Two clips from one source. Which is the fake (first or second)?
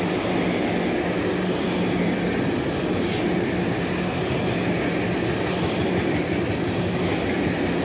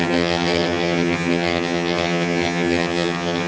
second